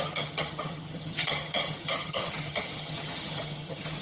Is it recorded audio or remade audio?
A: remade